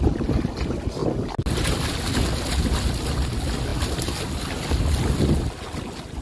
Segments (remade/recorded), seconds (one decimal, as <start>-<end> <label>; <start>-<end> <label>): 0.0-6.2 recorded